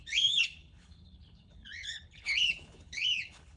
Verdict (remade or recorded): remade